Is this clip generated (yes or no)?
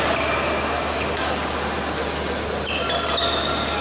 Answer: no